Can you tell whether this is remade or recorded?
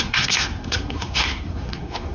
remade